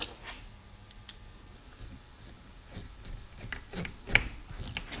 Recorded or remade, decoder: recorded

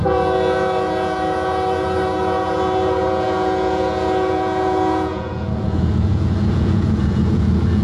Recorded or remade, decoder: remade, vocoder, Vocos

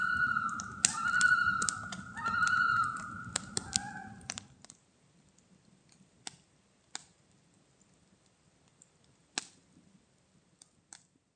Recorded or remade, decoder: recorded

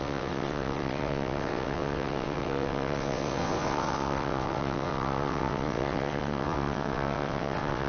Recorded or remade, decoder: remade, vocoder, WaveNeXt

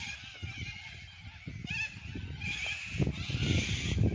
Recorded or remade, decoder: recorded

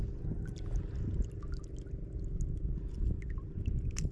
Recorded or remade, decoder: recorded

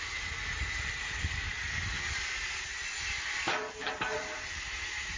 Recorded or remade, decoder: remade, vocoder, BigVGAN v2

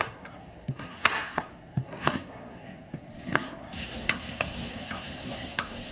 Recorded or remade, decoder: remade, codec, SNAC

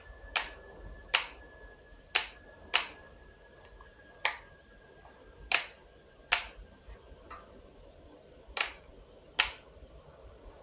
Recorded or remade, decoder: recorded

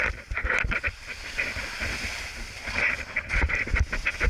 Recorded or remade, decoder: recorded